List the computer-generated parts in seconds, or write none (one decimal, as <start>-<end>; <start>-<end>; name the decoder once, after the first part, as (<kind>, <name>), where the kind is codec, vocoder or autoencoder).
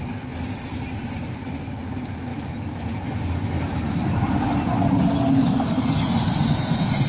none